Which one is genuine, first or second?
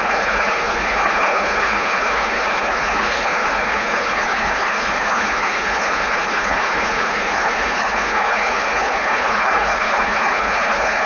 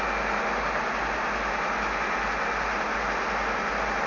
second